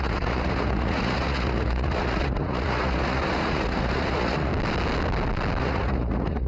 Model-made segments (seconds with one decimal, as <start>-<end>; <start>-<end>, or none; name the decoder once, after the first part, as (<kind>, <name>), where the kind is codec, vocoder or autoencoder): 0.0-4.5 (vocoder, Vocos); 5.6-6.5